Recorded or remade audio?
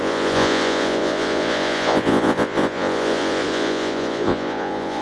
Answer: remade